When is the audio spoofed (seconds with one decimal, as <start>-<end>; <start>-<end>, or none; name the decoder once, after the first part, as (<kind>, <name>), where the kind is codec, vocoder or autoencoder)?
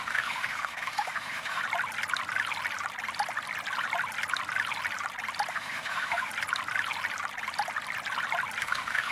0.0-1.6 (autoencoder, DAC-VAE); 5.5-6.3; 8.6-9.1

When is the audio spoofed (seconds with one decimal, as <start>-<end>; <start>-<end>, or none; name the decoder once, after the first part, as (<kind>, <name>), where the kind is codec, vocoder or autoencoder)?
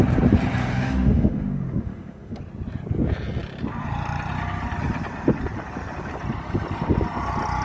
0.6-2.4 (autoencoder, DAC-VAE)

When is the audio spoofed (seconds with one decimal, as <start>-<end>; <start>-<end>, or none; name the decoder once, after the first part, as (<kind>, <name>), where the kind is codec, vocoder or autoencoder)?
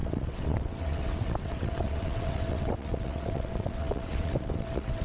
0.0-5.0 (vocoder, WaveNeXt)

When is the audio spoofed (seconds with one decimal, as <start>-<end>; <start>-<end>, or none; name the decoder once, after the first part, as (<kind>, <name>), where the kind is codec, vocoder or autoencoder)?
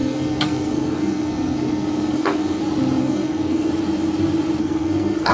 0.0-2.6 (codec, SNAC); 3.0-3.7; 4.6-5.3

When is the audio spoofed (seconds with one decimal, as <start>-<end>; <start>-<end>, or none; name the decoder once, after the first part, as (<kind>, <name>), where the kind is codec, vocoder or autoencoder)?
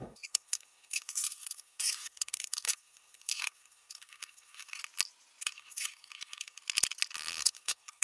0.0-4.8 (codec, SNAC); 5.4-6.6; 7.4-8.0